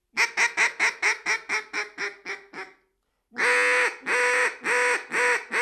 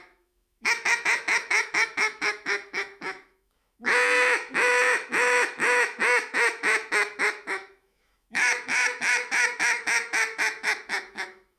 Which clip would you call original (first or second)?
first